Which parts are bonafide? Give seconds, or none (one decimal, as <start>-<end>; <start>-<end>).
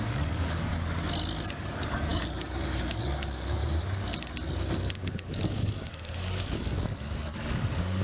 0.7-1.6; 3.6-4.8